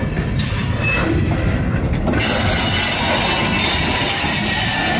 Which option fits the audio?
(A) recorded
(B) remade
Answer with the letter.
A